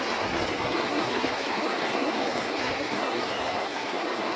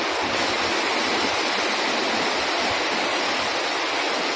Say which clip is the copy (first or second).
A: first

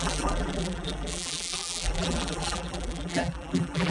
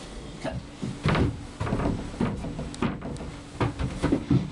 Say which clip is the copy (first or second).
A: first